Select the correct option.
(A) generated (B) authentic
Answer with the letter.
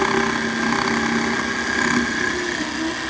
B